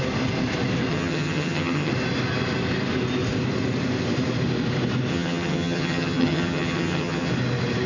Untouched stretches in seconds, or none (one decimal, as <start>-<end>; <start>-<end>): 0.0-0.9; 1.9-5.1; 7.3-7.9